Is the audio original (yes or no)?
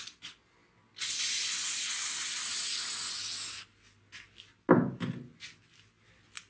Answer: yes